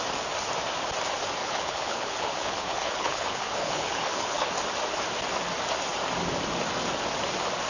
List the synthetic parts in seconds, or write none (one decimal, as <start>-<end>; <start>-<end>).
1.4-4.5